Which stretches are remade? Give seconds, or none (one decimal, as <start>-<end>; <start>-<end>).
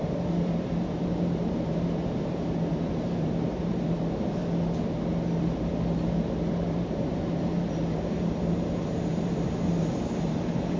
0.0-4.4; 6.5-10.8